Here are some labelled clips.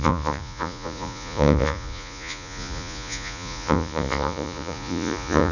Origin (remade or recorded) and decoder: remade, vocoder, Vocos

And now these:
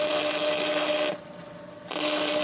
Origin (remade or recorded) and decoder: recorded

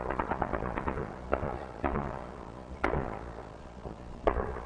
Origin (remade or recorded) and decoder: remade, vocoder, Vocos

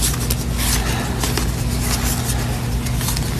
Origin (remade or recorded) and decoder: recorded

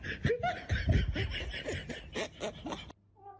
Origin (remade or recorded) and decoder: recorded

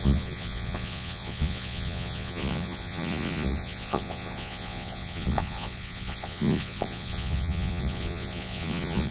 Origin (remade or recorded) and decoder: remade, vocoder, Vocos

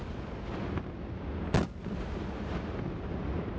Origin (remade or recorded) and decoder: recorded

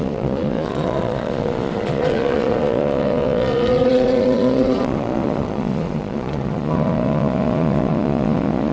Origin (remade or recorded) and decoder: remade, vocoder, Vocos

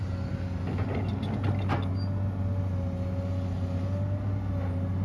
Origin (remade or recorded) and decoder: recorded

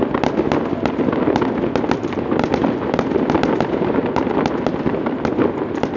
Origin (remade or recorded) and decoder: recorded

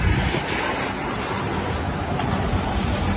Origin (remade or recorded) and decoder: recorded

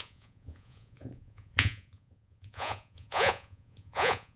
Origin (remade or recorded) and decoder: remade, vocoder, Vocos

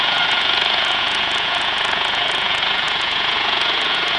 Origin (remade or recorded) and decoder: remade, vocoder, Vocos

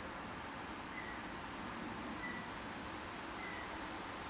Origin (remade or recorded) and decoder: recorded